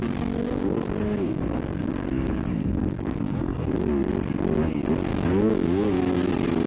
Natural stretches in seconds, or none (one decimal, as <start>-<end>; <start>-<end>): 3.9-5.1; 6.3-6.7